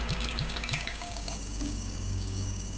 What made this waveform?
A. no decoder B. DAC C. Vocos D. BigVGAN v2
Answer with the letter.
B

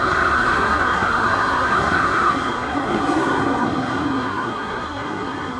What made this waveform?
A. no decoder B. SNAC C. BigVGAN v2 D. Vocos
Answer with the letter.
B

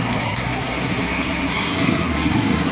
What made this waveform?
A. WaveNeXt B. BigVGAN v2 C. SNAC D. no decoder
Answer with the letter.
C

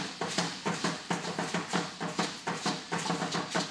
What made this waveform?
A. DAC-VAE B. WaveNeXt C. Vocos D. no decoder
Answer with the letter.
D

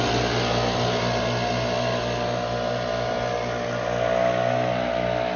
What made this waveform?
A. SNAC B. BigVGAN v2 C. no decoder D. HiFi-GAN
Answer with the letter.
C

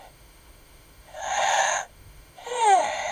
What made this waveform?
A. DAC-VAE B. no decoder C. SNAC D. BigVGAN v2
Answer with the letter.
A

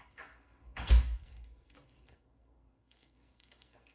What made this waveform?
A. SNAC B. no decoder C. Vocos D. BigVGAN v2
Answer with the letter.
A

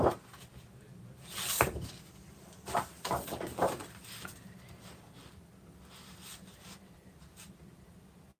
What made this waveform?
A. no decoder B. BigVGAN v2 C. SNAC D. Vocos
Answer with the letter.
A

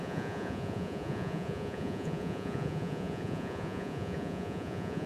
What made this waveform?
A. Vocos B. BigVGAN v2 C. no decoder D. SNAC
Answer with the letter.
A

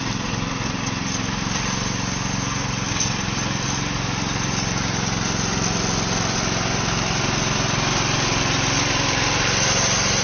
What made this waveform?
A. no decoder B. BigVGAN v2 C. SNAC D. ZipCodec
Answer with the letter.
A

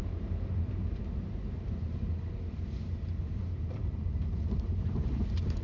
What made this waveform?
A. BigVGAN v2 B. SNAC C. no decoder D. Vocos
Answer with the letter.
A